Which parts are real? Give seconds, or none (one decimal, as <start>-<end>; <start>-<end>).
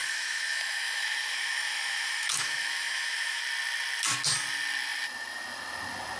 3.4-6.2